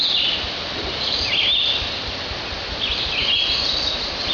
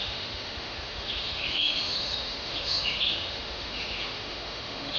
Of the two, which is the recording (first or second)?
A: first